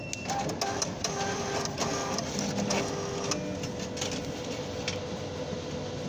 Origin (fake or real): real